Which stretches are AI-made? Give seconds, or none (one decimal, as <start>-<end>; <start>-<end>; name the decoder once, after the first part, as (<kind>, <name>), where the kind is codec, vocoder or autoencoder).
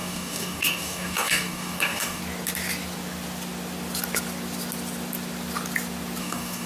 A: 0.0-2.2 (codec, DAC); 6.2-6.7